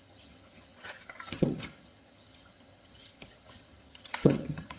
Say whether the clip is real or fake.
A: fake